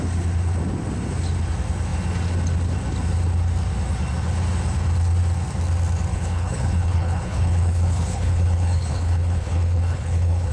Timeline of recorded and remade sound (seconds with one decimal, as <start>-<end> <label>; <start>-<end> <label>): 0.0-6.1 recorded; 6.1-10.5 remade